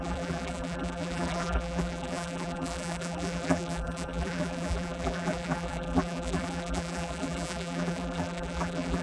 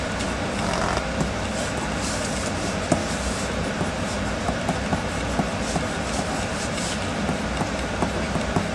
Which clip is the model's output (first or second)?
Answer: first